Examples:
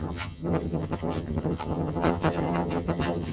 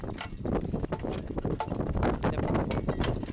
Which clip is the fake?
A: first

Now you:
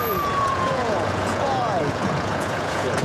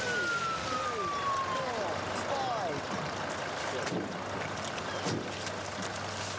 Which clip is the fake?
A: first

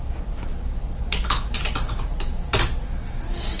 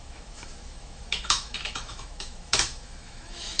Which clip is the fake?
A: second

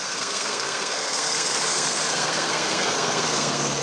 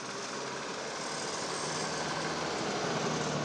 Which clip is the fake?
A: first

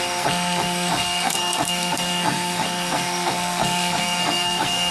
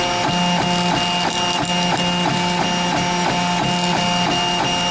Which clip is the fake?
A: first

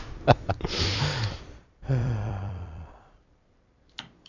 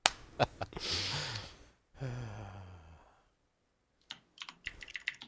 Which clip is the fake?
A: first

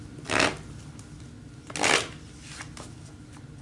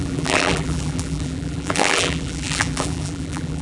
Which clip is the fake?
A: second